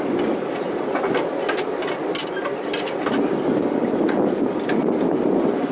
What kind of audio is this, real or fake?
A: real